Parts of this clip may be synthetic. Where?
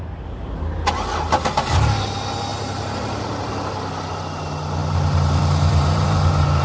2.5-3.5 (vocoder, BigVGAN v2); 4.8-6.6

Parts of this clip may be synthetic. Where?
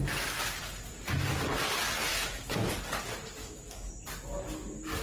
2.1-2.7 (autoencoder, DAC-VAE); 3.4-3.9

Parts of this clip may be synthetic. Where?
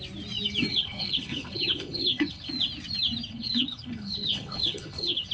0.7-2.5 (codec, HILCodec); 3.3-5.3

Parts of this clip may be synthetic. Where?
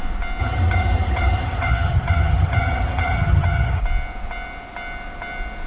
0.4-3.8 (vocoder, HiFi-GAN)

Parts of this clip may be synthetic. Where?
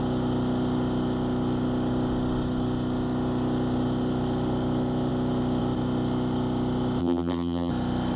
7.0-7.7 (vocoder, BigVGAN v2)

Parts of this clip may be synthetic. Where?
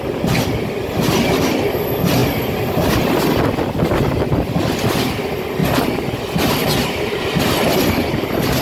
none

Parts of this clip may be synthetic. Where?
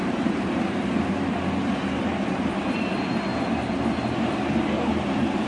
0.0-3.3 (vocoder, BigVGAN v2); 4.8-5.5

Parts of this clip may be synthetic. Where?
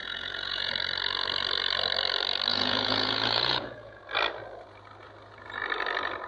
0.0-0.7 (vocoder, Vocos); 2.5-4.0